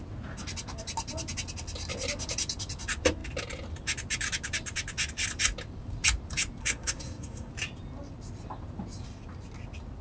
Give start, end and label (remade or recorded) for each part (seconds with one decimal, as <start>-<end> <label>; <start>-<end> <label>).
0.0-6.6 recorded; 6.6-7.5 remade; 7.5-10.0 recorded